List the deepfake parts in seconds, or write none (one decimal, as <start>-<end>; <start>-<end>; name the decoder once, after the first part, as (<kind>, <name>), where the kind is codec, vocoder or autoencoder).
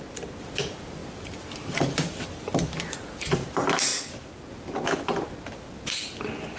none